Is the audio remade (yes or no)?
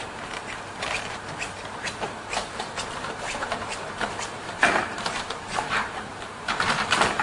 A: yes